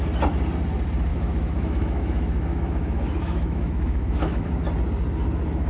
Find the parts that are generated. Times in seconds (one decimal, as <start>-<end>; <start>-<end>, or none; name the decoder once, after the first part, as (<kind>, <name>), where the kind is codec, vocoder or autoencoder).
1.1-4.5 (autoencoder, DAC-VAE)